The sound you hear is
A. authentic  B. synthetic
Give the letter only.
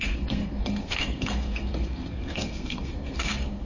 B